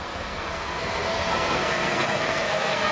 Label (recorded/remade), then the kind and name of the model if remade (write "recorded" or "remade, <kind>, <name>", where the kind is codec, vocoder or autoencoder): remade, codec, SNAC